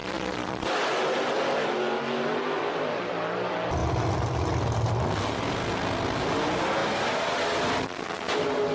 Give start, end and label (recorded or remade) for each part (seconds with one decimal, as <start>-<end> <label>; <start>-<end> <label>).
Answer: 0.0-0.7 remade; 0.7-6.8 recorded; 6.8-7.4 remade; 7.4-8.7 recorded

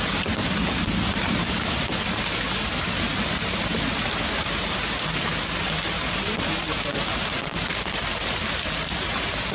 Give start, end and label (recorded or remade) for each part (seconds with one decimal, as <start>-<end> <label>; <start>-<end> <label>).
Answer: 0.0-9.5 remade

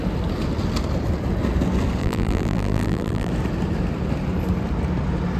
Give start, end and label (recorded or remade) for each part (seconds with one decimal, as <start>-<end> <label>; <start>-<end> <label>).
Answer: 0.0-2.0 recorded; 2.0-3.3 remade; 3.3-5.4 recorded

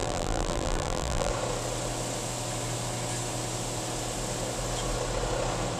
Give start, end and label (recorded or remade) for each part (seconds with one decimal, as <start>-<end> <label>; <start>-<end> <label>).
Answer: 0.0-1.3 remade; 1.3-5.8 recorded

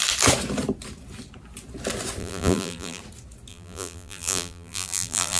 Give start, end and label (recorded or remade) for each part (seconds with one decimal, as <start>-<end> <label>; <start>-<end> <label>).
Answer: 0.0-2.2 recorded; 2.2-3.0 remade; 3.0-3.5 recorded; 3.5-5.4 remade